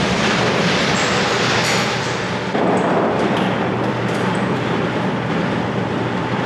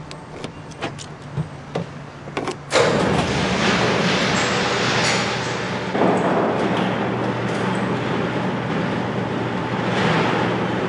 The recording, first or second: second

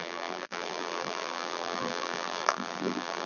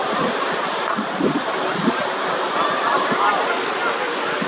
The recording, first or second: second